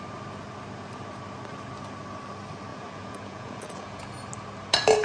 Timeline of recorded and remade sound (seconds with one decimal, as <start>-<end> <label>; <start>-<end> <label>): 0.0-2.7 recorded; 2.7-4.0 remade; 4.0-5.0 recorded